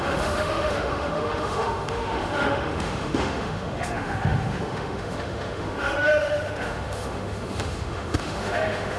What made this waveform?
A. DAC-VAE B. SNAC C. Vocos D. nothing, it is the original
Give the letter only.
A